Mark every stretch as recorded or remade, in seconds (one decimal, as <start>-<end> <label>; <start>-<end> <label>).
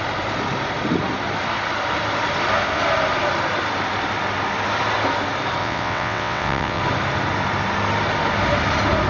0.0-5.6 recorded; 5.6-6.8 remade; 6.8-9.1 recorded